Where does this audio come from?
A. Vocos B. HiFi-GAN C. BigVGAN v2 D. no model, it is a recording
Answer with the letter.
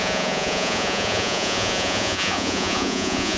A